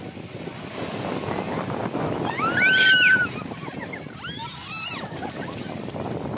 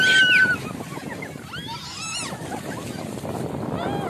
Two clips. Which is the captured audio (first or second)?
second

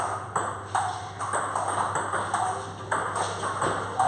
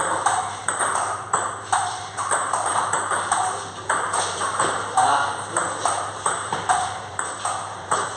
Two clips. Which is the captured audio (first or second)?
first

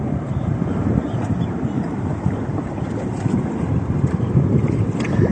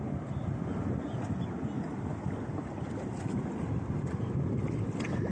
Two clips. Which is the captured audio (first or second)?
second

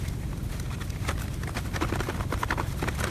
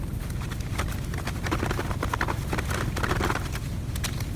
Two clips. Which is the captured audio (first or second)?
second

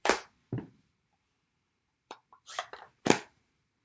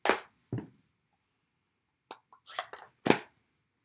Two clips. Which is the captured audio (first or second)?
second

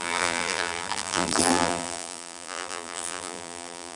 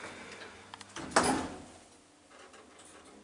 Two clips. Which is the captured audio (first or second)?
second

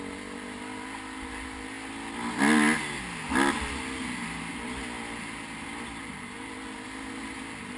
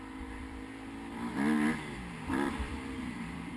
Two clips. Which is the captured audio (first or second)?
first